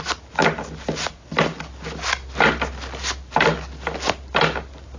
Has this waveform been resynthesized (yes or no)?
no